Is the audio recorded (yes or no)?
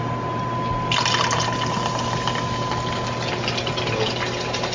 yes